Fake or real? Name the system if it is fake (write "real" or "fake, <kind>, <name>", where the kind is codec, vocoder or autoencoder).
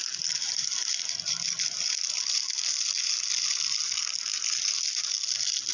real